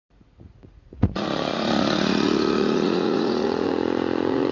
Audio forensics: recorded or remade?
remade